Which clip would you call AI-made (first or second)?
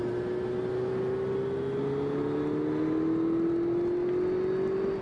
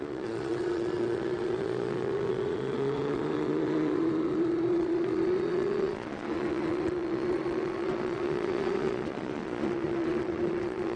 second